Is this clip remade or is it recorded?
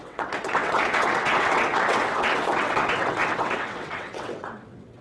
remade